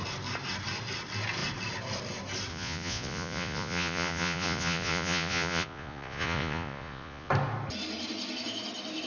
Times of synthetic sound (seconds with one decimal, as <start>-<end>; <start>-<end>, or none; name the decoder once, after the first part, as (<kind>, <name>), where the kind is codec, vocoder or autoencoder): 2.5-7.3 (vocoder, Vocos)